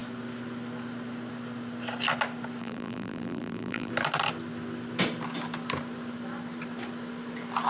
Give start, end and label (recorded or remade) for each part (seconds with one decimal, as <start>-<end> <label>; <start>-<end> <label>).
0.0-2.6 recorded; 2.6-3.9 remade; 3.9-7.7 recorded